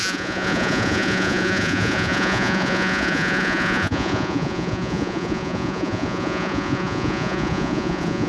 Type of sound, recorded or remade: remade